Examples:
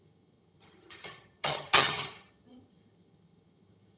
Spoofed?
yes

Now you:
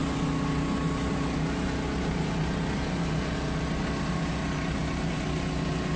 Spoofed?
no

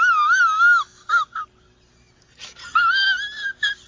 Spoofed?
no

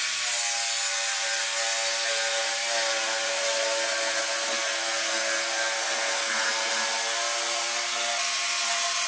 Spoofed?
no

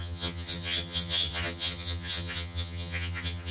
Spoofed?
yes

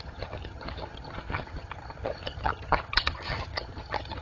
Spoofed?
yes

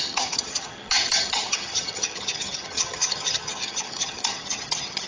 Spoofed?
yes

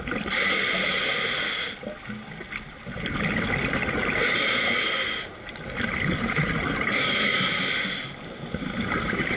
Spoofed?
no